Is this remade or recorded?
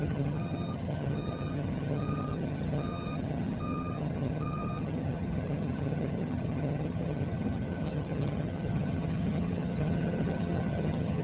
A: remade